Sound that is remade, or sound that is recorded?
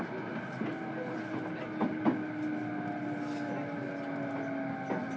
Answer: recorded